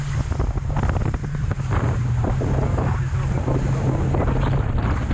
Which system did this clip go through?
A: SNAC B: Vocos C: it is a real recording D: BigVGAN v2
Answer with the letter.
C